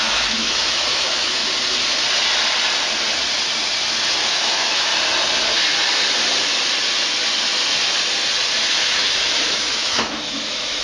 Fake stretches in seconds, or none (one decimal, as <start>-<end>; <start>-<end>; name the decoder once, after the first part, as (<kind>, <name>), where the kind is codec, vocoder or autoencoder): 0.0-1.4 (autoencoder, DAC-VAE); 4.3-4.9; 8.7-10.8